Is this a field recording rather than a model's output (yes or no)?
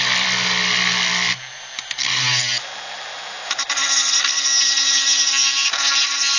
yes